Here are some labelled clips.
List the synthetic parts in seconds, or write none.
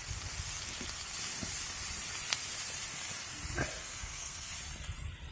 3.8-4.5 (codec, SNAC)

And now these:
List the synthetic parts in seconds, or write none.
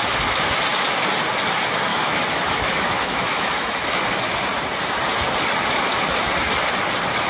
1.9-4.0 (autoencoder, DAC-VAE)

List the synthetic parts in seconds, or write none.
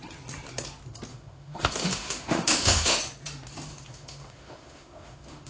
1.1-3.0 (autoencoder, DAC-VAE); 3.7-5.5